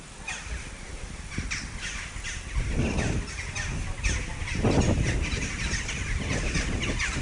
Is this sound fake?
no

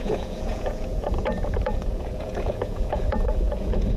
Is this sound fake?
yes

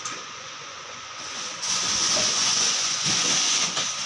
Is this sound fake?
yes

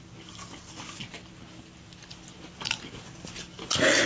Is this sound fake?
no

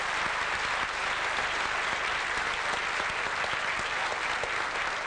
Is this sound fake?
no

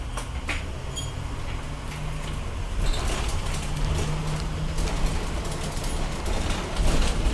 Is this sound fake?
no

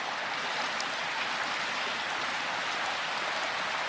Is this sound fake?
no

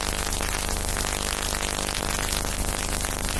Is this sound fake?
no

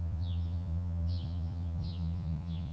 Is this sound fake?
yes